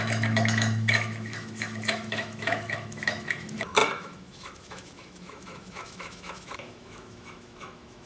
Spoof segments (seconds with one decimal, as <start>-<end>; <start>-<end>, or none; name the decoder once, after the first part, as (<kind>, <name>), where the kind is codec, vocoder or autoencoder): 0.0-8.1 (autoencoder, DAC-VAE)